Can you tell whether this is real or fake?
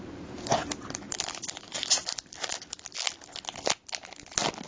real